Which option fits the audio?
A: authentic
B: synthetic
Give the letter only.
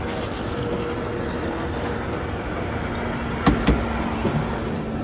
A